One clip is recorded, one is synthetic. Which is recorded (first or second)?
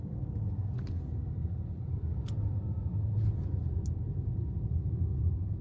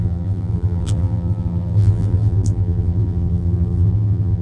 first